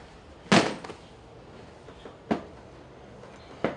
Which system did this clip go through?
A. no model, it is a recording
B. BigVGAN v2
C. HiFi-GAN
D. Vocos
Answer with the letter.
A